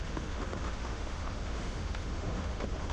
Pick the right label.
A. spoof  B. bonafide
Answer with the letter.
A